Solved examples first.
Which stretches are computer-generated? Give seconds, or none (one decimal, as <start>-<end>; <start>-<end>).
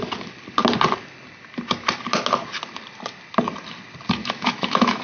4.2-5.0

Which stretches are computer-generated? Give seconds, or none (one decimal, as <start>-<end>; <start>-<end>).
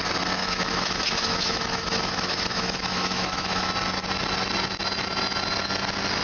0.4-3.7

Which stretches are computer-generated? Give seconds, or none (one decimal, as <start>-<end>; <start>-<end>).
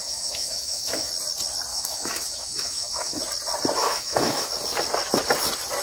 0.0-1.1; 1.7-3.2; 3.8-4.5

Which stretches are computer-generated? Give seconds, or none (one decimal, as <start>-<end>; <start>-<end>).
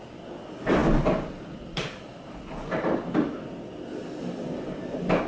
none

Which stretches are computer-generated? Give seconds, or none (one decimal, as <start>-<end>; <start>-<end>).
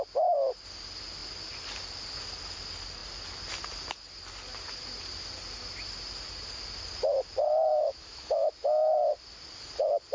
7.7-8.9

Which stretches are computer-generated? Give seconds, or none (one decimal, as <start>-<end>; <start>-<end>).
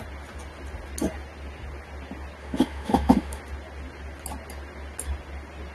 2.4-3.4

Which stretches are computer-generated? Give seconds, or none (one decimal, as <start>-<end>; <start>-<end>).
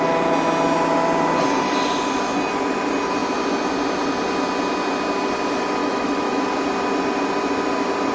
5.8-6.4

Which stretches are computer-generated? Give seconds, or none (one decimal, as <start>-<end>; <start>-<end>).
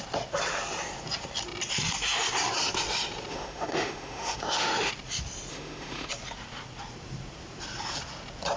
3.3-4.9; 5.5-6.1